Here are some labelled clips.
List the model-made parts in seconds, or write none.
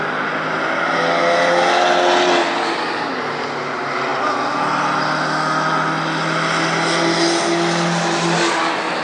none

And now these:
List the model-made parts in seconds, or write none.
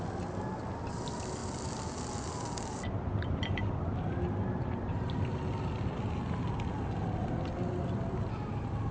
none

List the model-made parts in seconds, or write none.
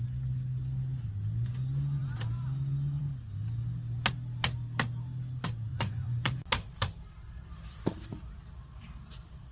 5.7-6.5